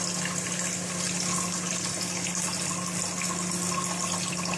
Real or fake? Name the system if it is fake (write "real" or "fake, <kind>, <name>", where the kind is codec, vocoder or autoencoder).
real